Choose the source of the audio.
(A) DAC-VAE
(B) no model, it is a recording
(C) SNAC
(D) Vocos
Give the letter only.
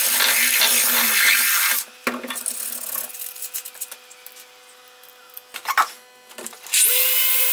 B